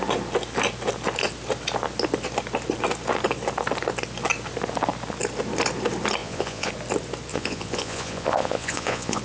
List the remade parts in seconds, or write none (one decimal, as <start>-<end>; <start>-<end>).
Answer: 6.2-6.7; 7.3-9.2